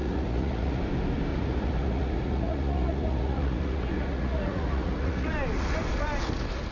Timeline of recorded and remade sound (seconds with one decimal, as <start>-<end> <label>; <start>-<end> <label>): 0.0-0.8 remade; 0.8-1.3 recorded; 1.3-5.3 remade; 5.3-6.7 recorded